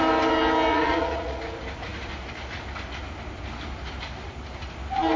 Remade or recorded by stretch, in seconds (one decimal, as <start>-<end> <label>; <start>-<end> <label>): 0.0-0.7 recorded; 0.7-1.4 remade; 1.4-5.2 recorded